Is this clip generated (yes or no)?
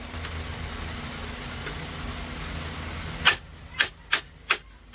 no